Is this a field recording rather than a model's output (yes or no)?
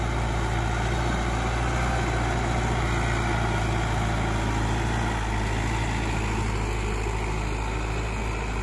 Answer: yes